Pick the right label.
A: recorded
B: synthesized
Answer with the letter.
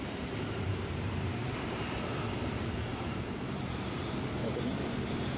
B